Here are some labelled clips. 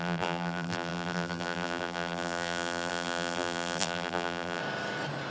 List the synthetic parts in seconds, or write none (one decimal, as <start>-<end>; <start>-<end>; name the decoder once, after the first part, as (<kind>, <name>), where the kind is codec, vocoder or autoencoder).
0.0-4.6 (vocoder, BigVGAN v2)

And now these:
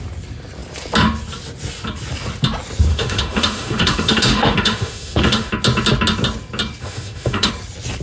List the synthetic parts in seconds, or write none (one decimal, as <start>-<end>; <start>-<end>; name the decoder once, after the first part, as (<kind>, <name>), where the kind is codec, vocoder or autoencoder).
2.9-5.5 (autoencoder, DAC-VAE); 6.8-7.5

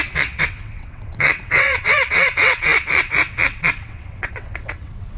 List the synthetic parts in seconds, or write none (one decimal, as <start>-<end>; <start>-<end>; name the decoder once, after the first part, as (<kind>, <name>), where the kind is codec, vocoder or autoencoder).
0.0-5.2 (vocoder, WaveNeXt)

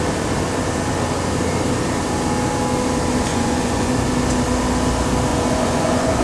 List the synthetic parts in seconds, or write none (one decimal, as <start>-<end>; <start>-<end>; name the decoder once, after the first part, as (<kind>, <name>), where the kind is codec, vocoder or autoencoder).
3.3-3.9 (vocoder, Vocos); 5.3-6.2